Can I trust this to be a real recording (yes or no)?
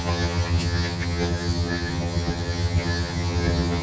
no